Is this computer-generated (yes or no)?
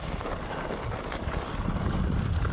no